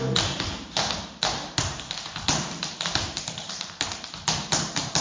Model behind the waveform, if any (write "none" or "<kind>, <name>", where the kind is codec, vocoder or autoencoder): vocoder, BigVGAN v2